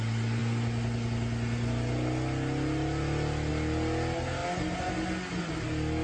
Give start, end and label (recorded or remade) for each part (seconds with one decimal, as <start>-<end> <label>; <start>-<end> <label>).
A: 0.0-6.0 recorded